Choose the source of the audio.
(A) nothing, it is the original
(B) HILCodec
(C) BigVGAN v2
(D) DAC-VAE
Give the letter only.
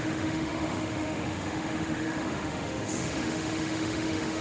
D